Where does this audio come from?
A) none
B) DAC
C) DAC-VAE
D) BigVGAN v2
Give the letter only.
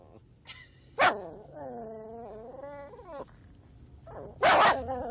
A